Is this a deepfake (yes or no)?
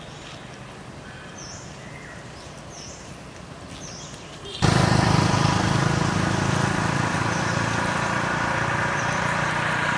no